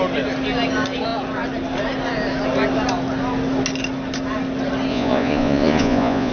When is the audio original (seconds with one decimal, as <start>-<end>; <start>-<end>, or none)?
0.0-4.9